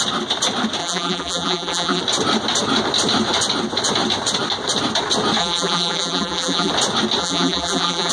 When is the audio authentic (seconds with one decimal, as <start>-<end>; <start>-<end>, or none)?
0.0-0.8; 2.0-5.4; 6.7-7.2